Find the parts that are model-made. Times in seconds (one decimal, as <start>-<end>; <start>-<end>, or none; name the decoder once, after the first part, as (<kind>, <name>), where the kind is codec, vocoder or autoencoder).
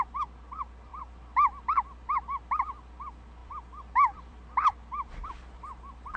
3.4-5.3 (vocoder, BigVGAN v2)